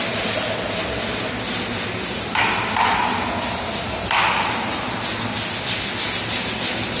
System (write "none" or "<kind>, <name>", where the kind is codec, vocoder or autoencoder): none